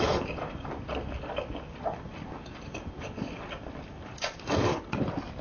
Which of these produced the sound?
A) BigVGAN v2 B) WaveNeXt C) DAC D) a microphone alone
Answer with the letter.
A